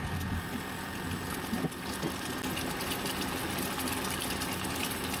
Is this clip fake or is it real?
real